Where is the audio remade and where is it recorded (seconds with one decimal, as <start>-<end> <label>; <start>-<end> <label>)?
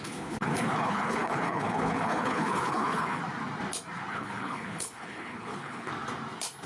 0.0-3.2 remade; 3.2-4.1 recorded; 4.1-5.9 remade; 5.9-6.7 recorded